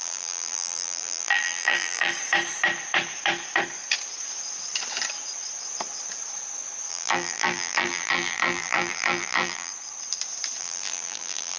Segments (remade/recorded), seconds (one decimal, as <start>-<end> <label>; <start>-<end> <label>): 0.0-2.1 remade; 2.1-6.9 recorded; 6.9-9.7 remade; 9.7-10.6 recorded; 10.6-11.6 remade